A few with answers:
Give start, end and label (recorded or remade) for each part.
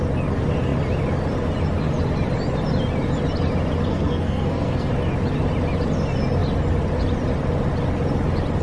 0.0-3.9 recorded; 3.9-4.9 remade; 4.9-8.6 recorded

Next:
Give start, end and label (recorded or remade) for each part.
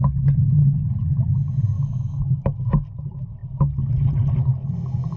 0.0-5.2 recorded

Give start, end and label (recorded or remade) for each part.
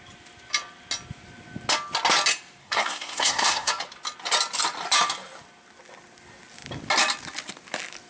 0.0-2.6 recorded; 2.6-3.7 remade; 3.7-8.1 recorded